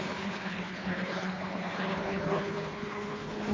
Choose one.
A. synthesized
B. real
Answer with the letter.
A